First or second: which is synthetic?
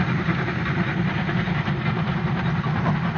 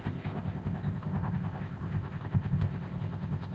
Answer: second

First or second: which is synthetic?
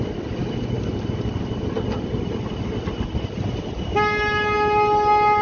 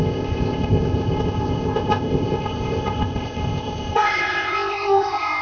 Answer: second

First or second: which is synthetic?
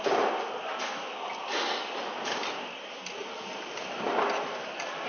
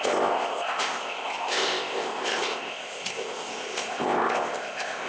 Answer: second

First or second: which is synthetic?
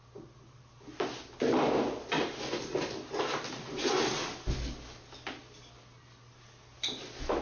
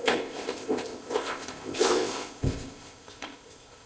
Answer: second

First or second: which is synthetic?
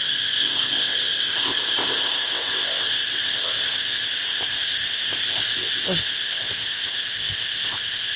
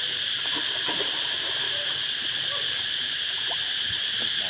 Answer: first